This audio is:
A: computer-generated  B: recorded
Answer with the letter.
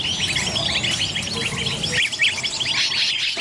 B